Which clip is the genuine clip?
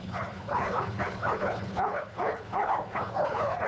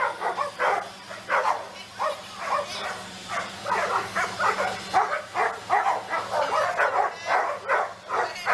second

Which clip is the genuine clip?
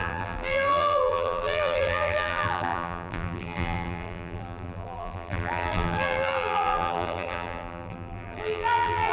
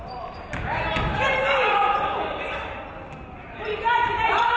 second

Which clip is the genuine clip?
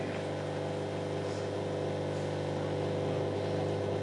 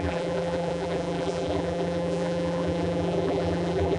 first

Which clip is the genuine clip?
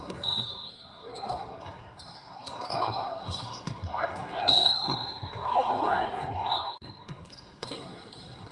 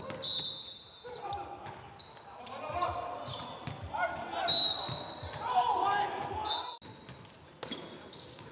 second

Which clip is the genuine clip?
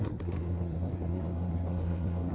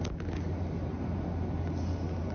second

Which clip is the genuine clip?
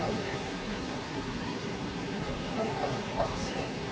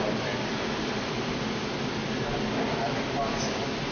second